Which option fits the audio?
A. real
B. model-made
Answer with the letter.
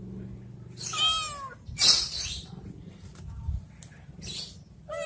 A